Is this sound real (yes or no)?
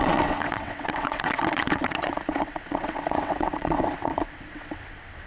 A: no